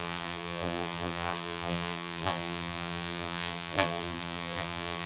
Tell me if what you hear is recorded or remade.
remade